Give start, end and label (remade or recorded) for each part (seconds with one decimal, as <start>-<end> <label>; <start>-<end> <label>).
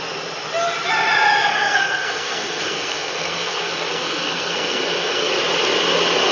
0.0-1.5 recorded; 1.5-5.3 remade; 5.3-6.3 recorded